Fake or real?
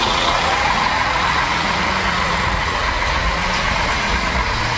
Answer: fake